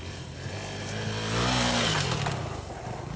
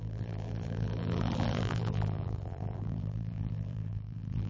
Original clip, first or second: first